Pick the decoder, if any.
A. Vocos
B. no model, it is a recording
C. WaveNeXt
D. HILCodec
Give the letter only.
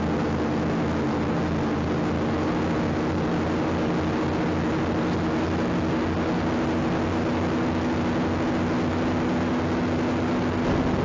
B